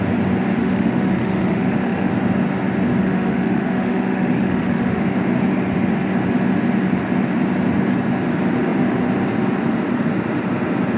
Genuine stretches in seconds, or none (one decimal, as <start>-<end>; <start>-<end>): 0.0-0.6; 2.1-3.0; 5.0-11.0